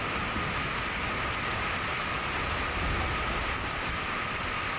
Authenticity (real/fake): real